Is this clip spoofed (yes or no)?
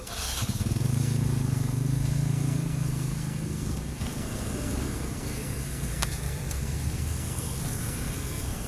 yes